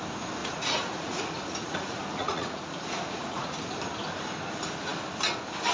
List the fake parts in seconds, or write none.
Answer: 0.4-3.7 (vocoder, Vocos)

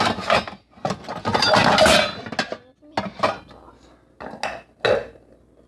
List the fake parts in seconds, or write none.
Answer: none

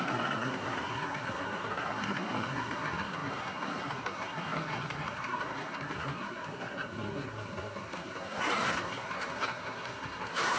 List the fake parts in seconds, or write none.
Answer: 0.0-10.6 (codec, SNAC)

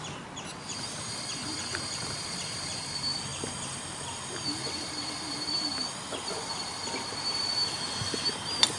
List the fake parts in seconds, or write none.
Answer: none